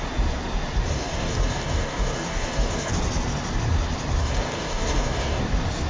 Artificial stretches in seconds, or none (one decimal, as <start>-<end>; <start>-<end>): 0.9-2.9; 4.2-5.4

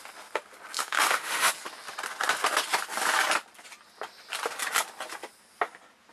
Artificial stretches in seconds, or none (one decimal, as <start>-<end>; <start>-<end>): 0.8-1.5

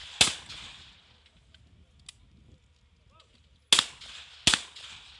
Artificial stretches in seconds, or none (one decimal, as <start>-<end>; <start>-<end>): none

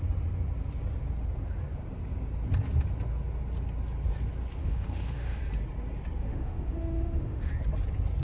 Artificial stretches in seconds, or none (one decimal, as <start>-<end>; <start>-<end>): 4.6-5.4; 6.2-7.5